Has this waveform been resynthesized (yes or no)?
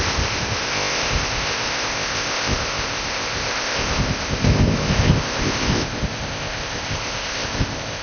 yes